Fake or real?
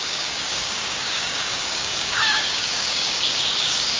fake